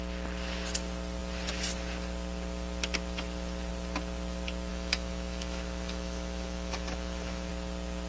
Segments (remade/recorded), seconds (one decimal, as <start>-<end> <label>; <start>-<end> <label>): 0.0-4.7 recorded; 4.7-7.5 remade; 7.5-8.1 recorded